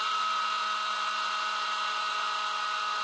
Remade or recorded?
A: recorded